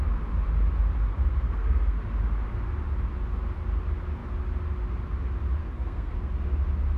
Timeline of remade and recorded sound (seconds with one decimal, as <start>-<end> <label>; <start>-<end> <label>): 0.0-1.1 recorded; 1.1-2.0 remade; 2.0-5.6 recorded; 5.6-6.3 remade; 6.3-7.0 recorded